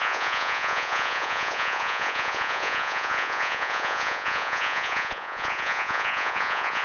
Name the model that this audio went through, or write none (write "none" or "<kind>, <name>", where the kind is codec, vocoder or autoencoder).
vocoder, Vocos